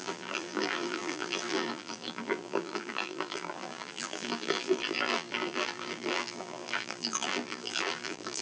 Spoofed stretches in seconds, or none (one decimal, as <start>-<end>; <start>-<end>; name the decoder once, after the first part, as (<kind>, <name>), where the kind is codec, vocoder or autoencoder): 0.0-8.4 (vocoder, BigVGAN v2)